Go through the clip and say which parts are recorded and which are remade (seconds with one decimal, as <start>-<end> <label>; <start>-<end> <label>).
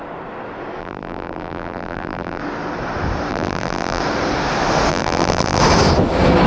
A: 0.0-0.8 recorded; 0.8-2.4 remade; 2.4-3.3 recorded; 3.3-4.0 remade; 4.0-4.9 recorded; 4.9-5.6 remade; 5.6-6.5 recorded